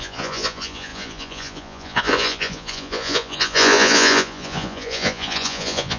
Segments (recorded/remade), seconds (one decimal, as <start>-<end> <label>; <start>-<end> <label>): 0.0-6.0 remade